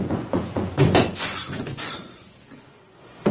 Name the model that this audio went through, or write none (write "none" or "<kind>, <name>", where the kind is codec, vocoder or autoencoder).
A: vocoder, Vocos